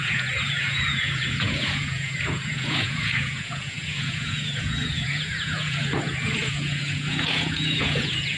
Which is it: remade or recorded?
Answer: remade